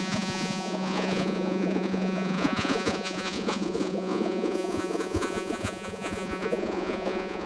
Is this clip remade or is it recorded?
remade